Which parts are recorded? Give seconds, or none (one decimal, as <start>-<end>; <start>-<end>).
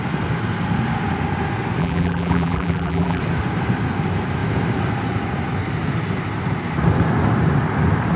0.0-1.8; 3.2-8.2